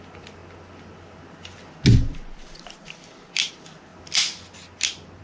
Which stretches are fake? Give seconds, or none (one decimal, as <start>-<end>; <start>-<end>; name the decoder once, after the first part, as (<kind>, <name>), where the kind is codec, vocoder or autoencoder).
none